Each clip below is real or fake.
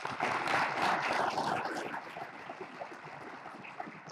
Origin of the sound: real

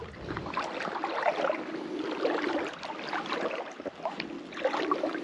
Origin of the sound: real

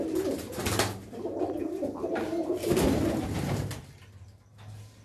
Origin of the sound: real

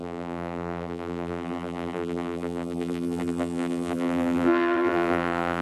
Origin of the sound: fake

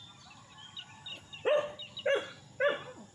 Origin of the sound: real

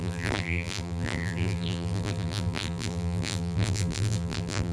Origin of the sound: fake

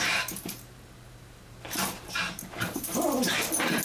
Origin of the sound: fake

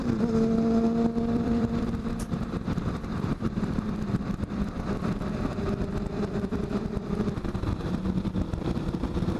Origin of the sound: fake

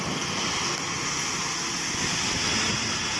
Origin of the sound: real